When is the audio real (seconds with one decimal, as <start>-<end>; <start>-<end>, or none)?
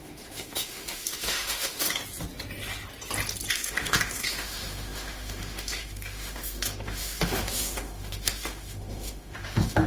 2.0-3.5